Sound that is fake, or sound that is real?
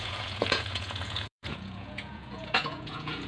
fake